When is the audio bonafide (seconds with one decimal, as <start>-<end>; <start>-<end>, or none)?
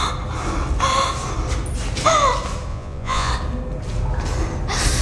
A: 0.0-2.7; 3.3-5.0